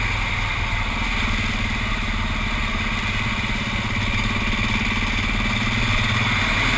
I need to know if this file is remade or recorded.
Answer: recorded